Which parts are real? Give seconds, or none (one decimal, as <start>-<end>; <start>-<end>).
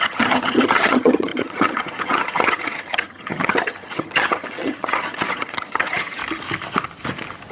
6.2-7.5